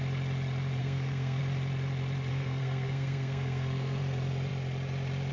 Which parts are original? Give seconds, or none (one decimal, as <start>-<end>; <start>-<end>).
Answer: 0.0-0.8; 1.4-2.3; 4.0-5.3